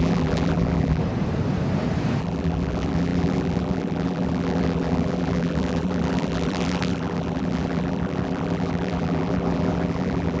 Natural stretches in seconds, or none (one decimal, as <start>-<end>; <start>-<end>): 1.0-2.2